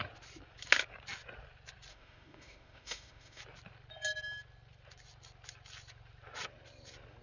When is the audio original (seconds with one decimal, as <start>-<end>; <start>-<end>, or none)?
0.0-1.9; 3.4-7.2